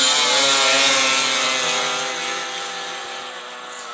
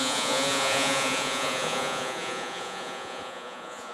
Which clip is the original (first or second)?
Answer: first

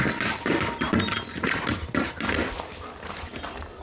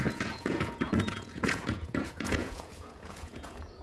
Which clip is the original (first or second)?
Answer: first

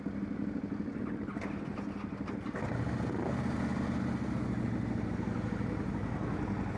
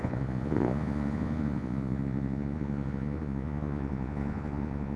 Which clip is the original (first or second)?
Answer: first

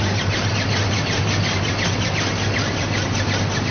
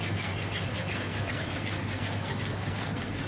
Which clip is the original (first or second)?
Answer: first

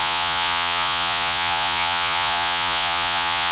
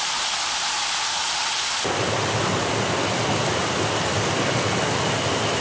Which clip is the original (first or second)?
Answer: second